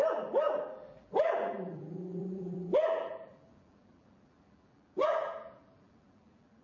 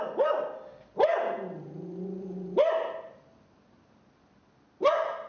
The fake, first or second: first